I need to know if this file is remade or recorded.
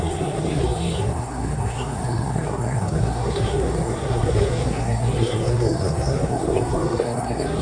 remade